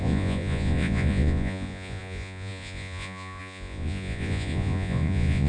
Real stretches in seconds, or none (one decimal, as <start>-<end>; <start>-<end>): none